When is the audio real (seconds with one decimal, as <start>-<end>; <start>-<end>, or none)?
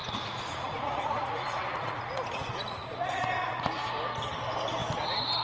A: 3.2-5.4